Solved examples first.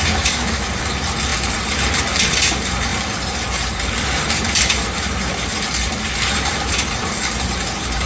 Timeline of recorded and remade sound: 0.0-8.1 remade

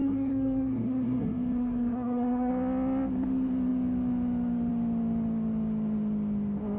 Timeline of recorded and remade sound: 0.0-2.5 remade; 2.5-6.8 recorded

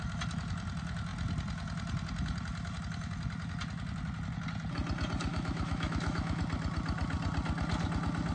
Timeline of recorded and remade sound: 0.0-5.3 recorded; 5.3-6.4 remade; 6.4-8.3 recorded

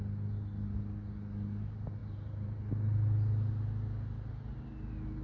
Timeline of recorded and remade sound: 0.0-2.0 recorded; 2.0-2.6 remade; 2.6-5.2 recorded

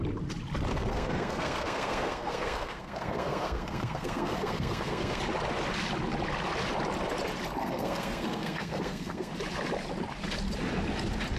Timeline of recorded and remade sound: 0.0-0.7 recorded; 0.7-5.2 remade; 5.2-7.6 recorded; 7.6-9.3 remade; 9.3-11.4 recorded

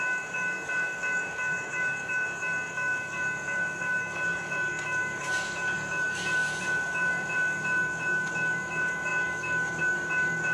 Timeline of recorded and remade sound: 0.0-10.5 remade

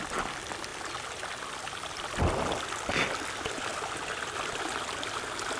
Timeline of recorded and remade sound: 0.0-3.7 recorded; 3.7-4.8 remade; 4.8-5.6 recorded